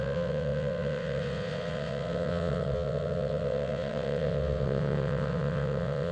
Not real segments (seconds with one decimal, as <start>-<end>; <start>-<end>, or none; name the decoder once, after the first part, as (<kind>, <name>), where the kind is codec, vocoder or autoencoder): 0.0-6.1 (vocoder, WaveNeXt)